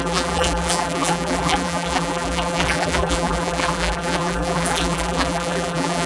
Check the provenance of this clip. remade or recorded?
remade